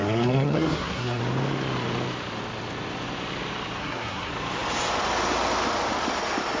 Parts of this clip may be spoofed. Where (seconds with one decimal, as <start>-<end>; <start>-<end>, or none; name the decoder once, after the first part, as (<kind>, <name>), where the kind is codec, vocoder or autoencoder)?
0.0-1.2 (codec, SNAC); 3.8-4.3